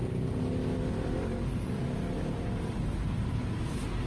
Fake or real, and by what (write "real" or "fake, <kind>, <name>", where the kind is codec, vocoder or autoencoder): real